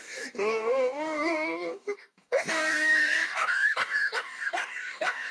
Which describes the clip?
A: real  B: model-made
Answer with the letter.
B